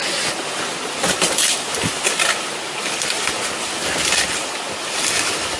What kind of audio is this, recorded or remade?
recorded